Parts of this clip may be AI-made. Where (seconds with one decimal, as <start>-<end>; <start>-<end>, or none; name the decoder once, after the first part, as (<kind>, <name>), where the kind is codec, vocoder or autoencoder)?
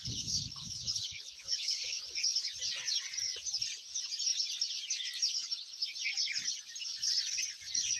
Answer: 0.0-2.0 (codec, HILCodec)